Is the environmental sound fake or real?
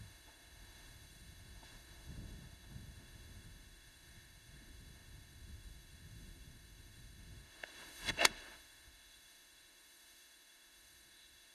fake